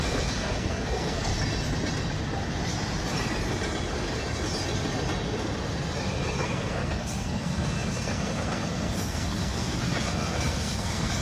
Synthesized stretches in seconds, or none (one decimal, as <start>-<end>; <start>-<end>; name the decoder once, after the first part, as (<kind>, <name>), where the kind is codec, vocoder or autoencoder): 0.0-1.3 (codec, SNAC); 6.4-11.2